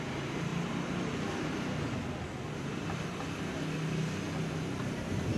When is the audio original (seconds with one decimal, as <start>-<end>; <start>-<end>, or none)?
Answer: 0.0-5.4